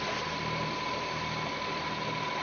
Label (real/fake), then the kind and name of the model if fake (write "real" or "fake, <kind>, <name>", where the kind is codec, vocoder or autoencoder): real